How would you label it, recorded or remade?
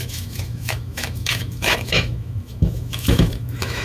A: remade